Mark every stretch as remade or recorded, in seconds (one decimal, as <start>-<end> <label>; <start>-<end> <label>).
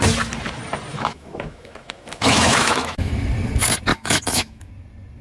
0.0-0.9 recorded; 0.9-3.1 remade; 3.1-3.9 recorded; 3.9-4.7 remade; 4.7-5.2 recorded